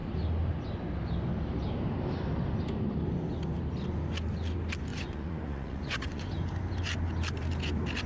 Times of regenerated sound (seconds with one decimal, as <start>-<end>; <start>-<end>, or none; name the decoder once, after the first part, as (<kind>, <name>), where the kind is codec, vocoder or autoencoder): 4.9-6.3 (vocoder, Vocos)